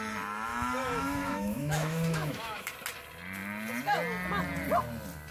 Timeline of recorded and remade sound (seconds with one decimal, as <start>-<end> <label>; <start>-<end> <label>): 0.0-0.5 recorded; 0.5-2.7 remade; 2.7-5.3 recorded